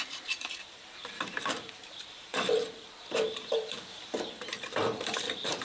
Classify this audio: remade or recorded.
remade